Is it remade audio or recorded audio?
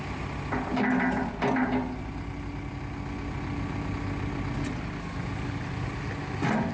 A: recorded